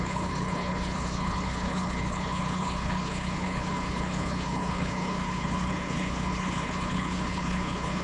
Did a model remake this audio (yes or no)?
yes